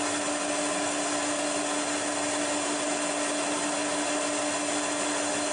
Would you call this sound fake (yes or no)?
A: no